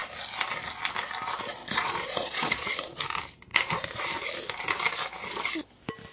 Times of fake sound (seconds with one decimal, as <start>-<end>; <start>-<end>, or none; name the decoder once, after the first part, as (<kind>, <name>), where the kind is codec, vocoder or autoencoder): 1.6-3.0 (vocoder, Vocos)